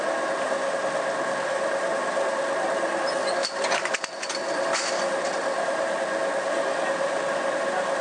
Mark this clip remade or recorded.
recorded